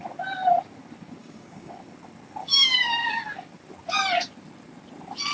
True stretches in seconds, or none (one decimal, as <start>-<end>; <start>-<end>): 0.0-1.2; 1.7-2.4; 3.2-5.3